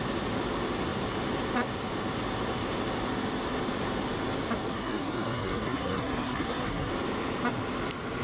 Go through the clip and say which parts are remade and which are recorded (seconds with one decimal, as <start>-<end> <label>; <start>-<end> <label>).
0.0-4.7 recorded; 4.7-6.9 remade; 6.9-8.2 recorded